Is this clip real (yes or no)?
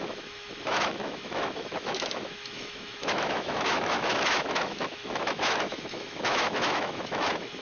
no